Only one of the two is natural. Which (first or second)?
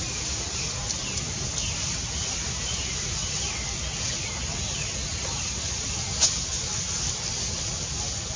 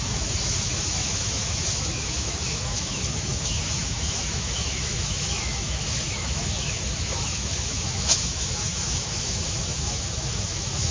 first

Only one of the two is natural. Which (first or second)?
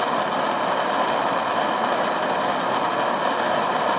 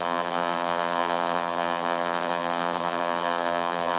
first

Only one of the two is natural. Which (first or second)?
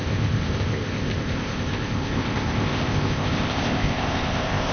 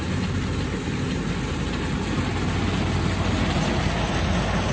second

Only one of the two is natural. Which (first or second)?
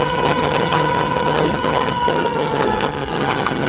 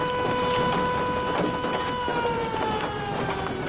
second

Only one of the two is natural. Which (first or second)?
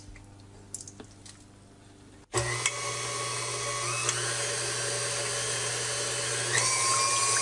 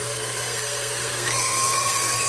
first